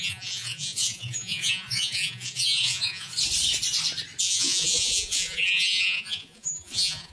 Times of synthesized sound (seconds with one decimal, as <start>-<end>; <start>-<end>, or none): 0.0-3.1; 4.2-7.1